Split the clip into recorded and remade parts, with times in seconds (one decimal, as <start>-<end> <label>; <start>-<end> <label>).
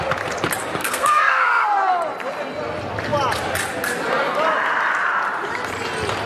0.0-0.8 recorded; 0.8-1.9 remade; 1.9-6.3 recorded